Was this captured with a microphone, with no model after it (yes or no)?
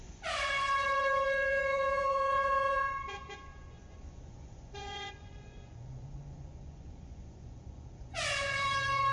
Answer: no